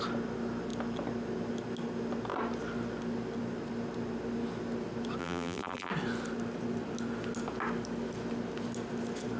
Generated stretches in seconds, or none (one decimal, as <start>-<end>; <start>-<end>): 5.2-5.9